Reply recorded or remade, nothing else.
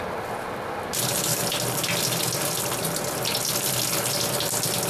recorded